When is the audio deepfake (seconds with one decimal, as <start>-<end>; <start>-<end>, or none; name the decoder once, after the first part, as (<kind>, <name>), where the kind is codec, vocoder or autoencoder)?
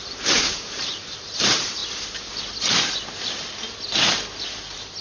0.0-1.8 (vocoder, BigVGAN v2)